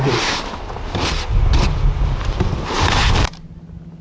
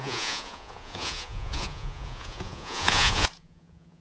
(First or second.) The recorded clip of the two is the first